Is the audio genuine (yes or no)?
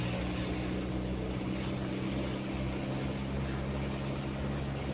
yes